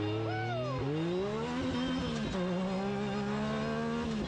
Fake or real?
real